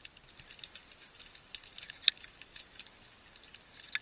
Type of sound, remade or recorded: recorded